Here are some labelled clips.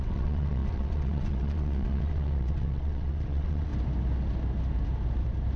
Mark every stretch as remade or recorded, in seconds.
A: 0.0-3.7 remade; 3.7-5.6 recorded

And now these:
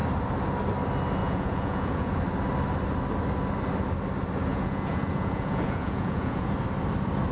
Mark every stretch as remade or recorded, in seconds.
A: 0.0-1.2 recorded; 1.2-2.2 remade; 2.2-4.5 recorded; 4.5-6.5 remade; 6.5-7.3 recorded

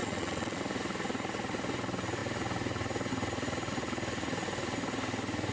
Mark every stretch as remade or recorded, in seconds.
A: 0.0-0.6 remade; 0.6-5.5 recorded

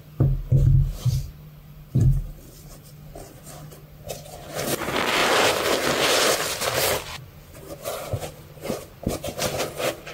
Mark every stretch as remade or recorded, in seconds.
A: 0.0-10.1 recorded

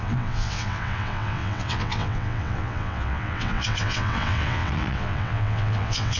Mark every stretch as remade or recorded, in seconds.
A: 0.0-6.2 remade